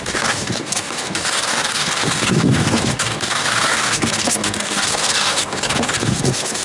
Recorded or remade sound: remade